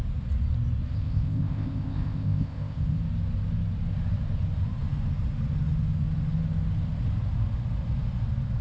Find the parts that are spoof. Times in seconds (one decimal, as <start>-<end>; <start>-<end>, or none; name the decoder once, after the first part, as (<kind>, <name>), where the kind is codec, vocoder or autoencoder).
0.9-3.0 (codec, ZipCodec)